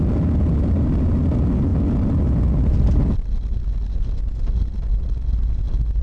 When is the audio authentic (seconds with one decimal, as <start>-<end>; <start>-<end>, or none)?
0.0-6.0